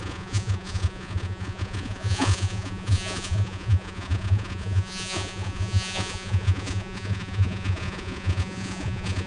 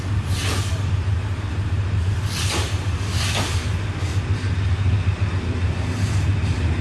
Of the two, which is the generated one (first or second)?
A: first